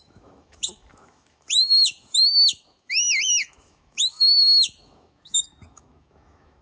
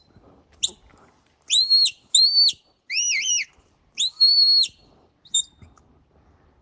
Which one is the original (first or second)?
second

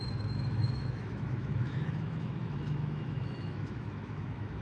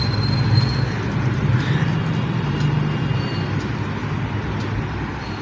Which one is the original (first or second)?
second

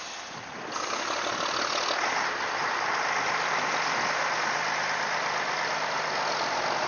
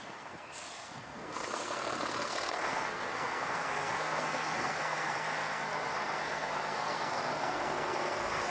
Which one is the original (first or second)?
first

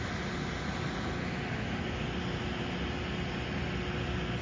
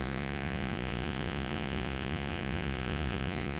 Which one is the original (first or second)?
first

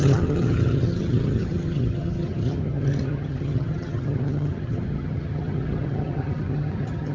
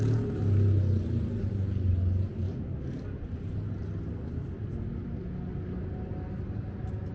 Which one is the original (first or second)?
second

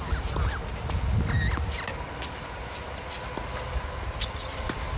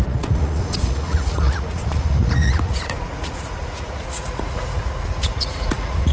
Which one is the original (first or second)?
first